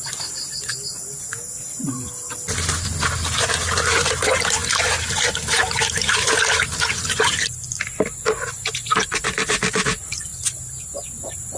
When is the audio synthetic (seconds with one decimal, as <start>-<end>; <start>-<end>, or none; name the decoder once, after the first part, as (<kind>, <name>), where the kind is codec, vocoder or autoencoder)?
none